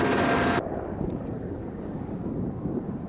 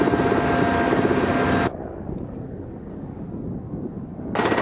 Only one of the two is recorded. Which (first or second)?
second